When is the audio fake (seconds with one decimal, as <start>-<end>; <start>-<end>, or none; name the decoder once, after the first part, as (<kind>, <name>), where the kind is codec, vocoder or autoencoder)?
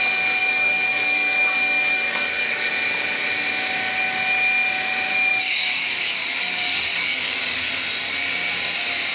0.4-2.7 (codec, DAC); 5.3-7.7